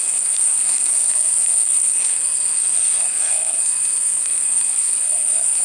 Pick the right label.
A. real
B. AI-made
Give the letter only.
B